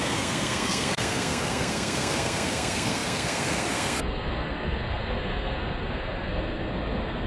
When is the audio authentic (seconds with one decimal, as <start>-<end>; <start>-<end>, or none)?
none